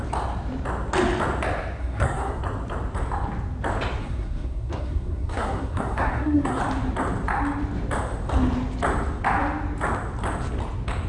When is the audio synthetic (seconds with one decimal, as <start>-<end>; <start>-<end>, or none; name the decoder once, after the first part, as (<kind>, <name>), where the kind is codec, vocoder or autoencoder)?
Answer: 1.8-2.4 (codec, SNAC); 4.0-6.6